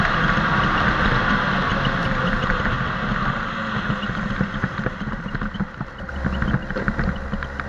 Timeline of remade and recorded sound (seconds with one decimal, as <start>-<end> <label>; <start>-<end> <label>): 0.0-7.7 recorded